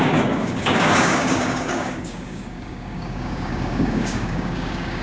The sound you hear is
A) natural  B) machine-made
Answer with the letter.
B